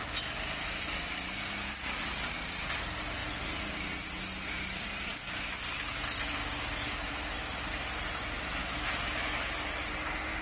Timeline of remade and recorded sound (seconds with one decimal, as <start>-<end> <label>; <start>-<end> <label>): 0.0-8.6 recorded; 8.6-9.7 remade; 9.7-10.4 recorded